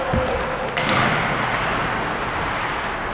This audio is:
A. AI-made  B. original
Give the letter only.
B